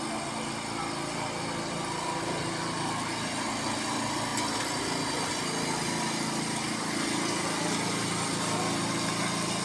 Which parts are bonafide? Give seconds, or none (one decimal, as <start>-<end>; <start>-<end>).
0.0-9.6